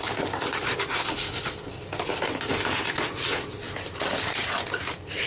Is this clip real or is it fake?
real